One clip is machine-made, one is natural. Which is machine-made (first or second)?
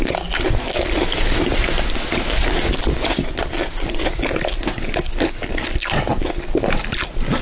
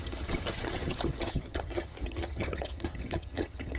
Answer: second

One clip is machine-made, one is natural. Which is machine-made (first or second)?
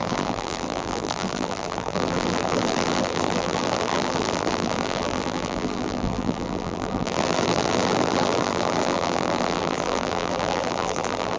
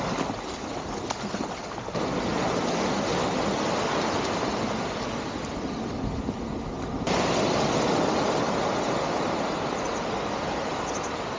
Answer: first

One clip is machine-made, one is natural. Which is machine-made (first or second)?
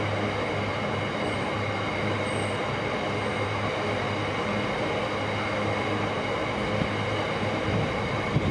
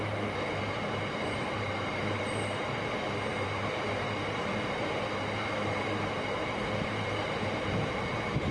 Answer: second